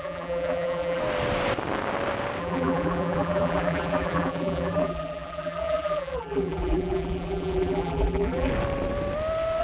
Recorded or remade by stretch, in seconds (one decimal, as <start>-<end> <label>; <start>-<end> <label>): 0.0-1.0 remade; 1.0-2.4 recorded; 2.4-8.5 remade; 8.5-9.6 recorded